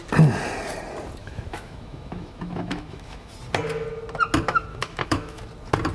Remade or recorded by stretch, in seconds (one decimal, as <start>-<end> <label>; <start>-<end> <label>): 0.0-1.2 recorded; 1.2-3.3 remade; 3.3-4.7 recorded; 4.7-5.5 remade; 5.5-5.9 recorded